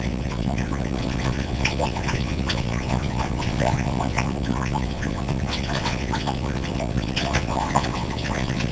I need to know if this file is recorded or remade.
remade